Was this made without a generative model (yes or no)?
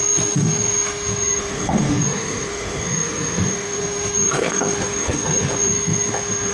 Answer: no